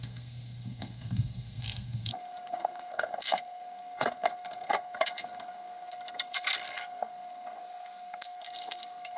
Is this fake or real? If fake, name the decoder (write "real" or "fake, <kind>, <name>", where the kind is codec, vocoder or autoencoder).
fake, codec, SNAC